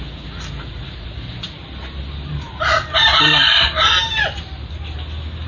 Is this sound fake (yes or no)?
no